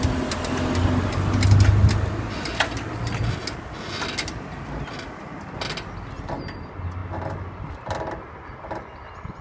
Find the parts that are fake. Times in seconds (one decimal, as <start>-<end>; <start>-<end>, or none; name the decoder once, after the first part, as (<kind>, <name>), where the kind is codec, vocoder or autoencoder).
none